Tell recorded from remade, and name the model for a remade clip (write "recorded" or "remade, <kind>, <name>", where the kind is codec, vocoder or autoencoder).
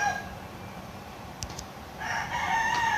remade, vocoder, BigVGAN v2